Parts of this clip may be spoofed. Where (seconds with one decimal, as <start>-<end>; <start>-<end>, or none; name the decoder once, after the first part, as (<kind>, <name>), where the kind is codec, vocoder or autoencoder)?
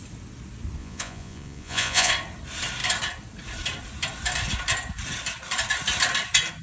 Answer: 0.8-2.1 (vocoder, Vocos)